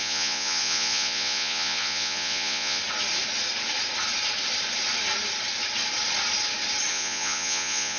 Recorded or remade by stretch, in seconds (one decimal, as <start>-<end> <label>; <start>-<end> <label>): 0.0-2.8 remade; 2.8-6.9 recorded; 6.9-8.0 remade